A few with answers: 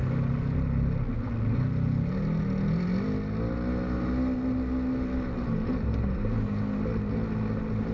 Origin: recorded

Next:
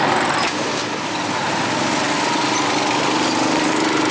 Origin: recorded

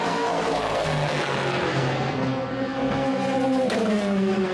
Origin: remade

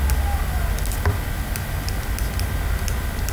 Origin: recorded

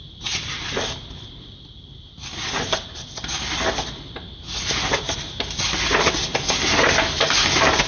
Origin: recorded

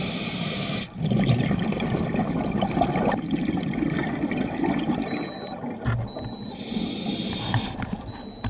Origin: recorded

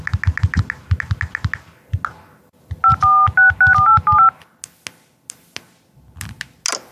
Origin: recorded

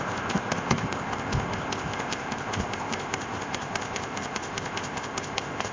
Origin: remade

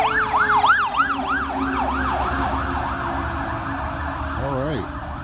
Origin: recorded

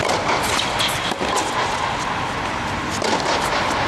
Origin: recorded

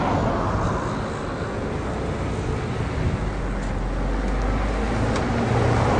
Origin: recorded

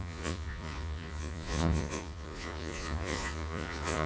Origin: remade